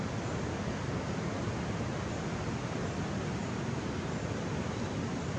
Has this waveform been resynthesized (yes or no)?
no